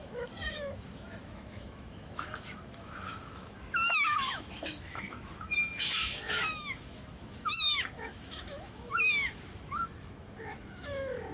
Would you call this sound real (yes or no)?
no